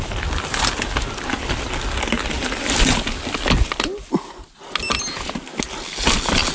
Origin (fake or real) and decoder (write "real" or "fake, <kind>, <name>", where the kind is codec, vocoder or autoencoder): real